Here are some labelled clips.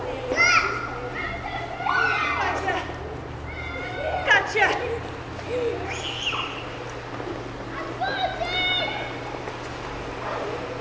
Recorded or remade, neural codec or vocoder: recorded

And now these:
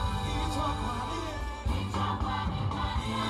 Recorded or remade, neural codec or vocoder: recorded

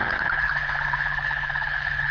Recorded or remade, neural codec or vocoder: remade, codec, HILCodec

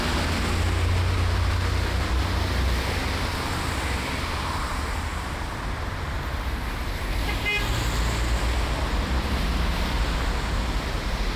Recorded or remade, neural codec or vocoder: recorded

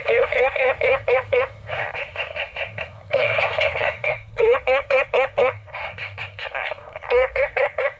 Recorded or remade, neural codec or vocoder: remade, codec, SNAC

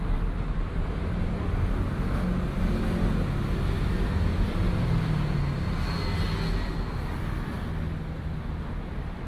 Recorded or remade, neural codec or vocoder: recorded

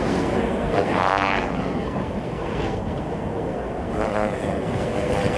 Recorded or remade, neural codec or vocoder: remade, codec, SNAC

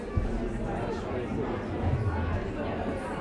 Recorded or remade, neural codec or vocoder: recorded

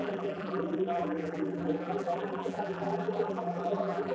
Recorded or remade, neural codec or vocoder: remade, vocoder, BigVGAN v2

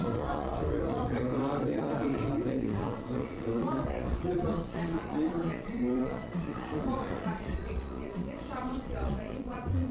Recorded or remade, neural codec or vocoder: remade, vocoder, Vocos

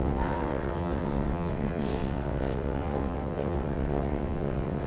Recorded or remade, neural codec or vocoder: remade, vocoder, WaveNeXt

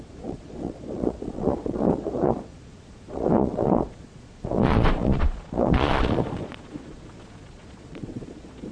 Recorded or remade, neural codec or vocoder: remade, vocoder, Vocos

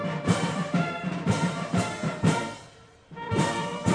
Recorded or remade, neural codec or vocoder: remade, vocoder, BigVGAN v2